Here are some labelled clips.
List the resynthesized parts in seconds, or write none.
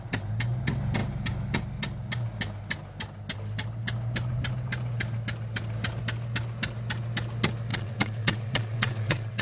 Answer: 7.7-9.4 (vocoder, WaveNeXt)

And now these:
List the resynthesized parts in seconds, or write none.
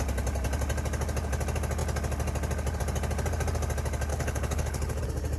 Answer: 4.1-5.0 (codec, HILCodec)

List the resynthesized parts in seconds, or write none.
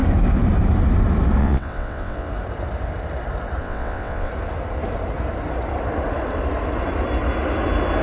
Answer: 1.4-2.3 (vocoder, WaveNeXt); 3.6-4.3